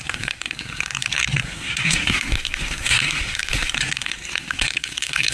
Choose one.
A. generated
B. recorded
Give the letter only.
A